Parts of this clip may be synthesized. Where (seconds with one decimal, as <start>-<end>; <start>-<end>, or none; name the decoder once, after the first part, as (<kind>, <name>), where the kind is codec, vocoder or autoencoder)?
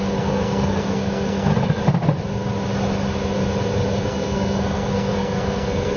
0.0-1.5 (codec, SNAC); 4.0-6.0